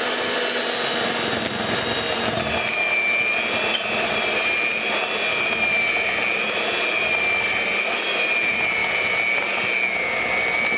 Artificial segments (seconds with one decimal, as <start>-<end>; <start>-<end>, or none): none